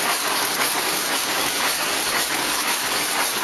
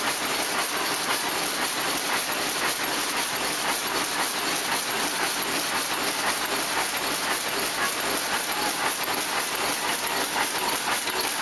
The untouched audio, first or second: second